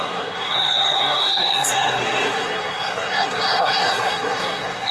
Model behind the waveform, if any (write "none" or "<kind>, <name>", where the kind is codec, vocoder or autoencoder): codec, SNAC